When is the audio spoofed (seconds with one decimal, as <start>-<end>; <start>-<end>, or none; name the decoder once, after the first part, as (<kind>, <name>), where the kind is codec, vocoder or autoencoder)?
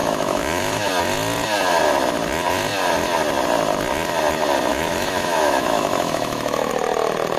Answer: 0.0-0.9 (autoencoder, DAC-VAE); 4.7-6.7